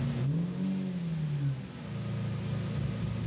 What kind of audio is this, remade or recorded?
recorded